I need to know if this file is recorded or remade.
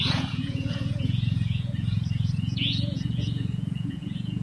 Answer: remade